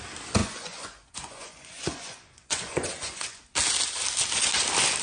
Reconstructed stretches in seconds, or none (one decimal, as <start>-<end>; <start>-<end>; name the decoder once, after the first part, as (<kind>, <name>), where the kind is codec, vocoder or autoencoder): 0.4-3.4 (vocoder, Vocos)